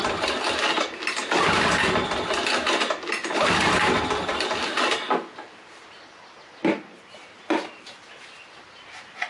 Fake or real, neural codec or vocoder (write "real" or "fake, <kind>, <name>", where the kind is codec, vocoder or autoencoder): real